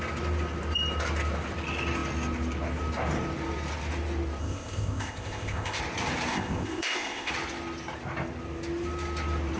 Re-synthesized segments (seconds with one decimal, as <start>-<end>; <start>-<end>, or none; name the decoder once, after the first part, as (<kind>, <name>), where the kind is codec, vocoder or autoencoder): 4.4-5.8 (codec, ZipCodec); 6.3-7.3